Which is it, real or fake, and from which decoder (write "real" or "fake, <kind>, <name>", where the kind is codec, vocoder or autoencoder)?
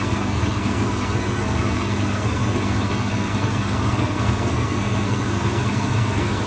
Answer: fake, codec, SNAC